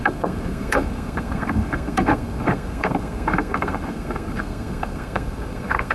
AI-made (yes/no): yes